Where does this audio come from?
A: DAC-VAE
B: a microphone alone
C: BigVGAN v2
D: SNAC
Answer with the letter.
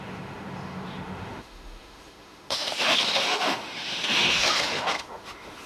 A